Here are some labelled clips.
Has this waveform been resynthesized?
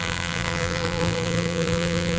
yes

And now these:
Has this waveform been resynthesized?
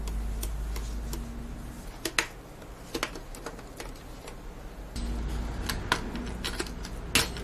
no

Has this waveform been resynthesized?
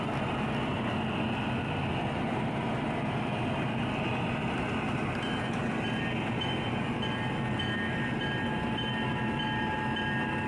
no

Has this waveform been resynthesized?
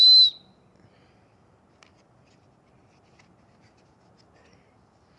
no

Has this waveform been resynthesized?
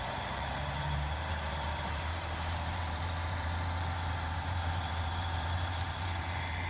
yes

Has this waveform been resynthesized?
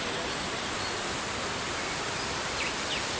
no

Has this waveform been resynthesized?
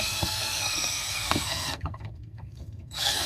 yes